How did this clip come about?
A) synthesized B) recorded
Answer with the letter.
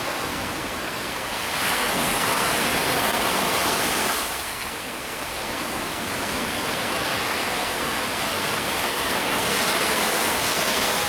A